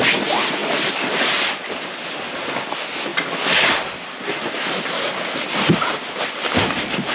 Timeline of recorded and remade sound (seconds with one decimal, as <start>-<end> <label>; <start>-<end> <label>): 0.0-7.1 recorded